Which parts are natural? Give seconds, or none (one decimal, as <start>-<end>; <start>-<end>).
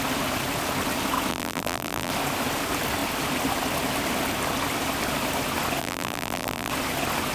0.0-1.3; 2.1-5.8; 6.7-7.3